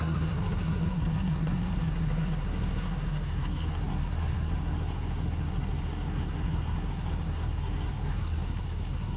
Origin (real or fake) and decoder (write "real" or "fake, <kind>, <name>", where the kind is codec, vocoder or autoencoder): fake, codec, SNAC